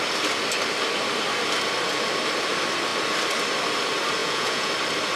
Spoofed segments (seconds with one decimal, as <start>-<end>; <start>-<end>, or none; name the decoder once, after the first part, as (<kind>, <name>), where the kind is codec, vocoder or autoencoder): 4.2-4.7 (vocoder, Vocos)